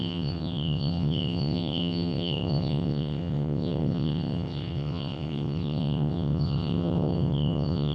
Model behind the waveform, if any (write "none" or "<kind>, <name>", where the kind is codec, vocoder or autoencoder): vocoder, WaveNeXt